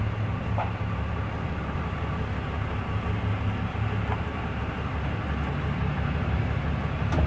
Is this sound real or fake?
real